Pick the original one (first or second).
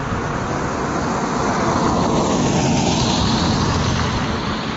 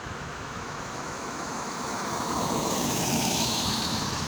first